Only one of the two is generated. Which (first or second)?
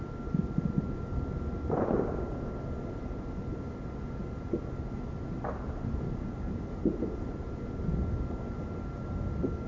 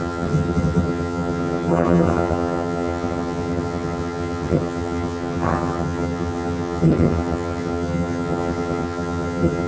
second